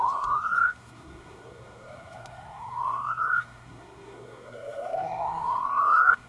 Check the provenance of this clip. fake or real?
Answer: fake